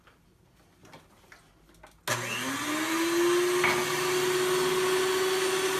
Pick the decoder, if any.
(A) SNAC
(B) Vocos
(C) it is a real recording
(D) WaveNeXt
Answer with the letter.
C